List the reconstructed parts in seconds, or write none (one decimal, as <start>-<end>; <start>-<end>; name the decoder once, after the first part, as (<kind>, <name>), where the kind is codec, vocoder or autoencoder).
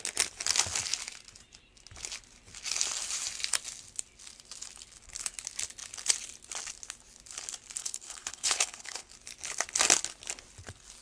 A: 7.8-9.1 (codec, HILCodec)